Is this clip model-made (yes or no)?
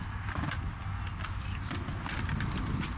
no